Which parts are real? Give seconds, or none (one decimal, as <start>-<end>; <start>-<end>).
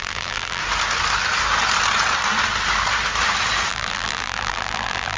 0.6-3.7